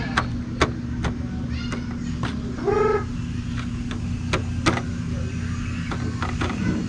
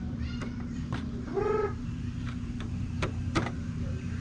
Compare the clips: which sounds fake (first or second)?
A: second